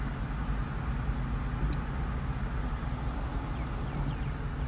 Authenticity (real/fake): real